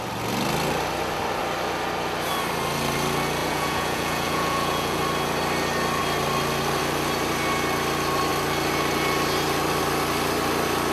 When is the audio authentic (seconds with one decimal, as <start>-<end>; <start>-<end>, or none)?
0.0-3.4; 5.0-10.9